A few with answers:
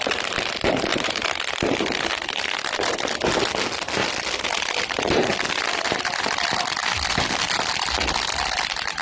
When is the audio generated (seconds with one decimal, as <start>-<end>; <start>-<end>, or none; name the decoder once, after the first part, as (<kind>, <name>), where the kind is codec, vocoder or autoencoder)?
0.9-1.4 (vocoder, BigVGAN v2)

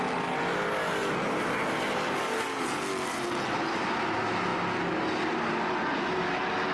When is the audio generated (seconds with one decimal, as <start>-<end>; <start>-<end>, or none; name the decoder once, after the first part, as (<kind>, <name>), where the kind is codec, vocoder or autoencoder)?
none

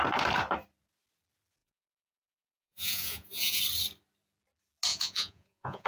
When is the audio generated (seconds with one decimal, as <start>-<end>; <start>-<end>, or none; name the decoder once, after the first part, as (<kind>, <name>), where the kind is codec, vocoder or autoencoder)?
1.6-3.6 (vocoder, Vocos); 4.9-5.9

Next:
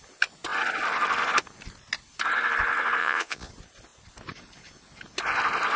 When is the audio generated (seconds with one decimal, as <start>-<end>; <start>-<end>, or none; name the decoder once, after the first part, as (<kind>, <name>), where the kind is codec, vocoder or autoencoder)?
3.0-3.5 (vocoder, Vocos)

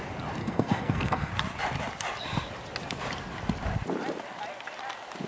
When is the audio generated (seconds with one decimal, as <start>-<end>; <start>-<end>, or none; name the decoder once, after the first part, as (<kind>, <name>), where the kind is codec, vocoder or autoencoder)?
0.4-1.3 (codec, SNAC)

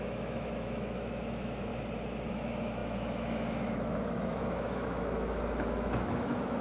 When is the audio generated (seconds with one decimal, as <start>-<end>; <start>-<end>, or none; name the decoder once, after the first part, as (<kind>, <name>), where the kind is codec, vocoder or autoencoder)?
0.0-1.7 (autoencoder, DAC-VAE); 2.3-6.6

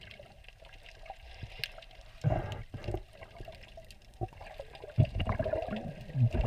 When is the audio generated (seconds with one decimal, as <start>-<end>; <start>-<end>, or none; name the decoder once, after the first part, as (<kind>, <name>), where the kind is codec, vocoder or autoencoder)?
none